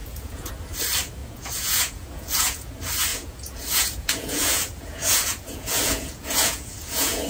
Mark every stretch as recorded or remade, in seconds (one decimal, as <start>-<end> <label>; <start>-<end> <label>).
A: 0.0-0.5 remade; 0.5-1.2 recorded; 1.2-2.7 remade; 2.7-3.1 recorded; 3.1-7.3 remade